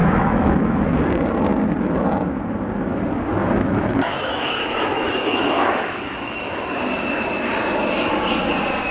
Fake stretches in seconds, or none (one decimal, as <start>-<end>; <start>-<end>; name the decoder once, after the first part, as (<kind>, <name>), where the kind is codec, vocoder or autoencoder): 0.0-0.8 (autoencoder, DAC-VAE); 3.4-6.6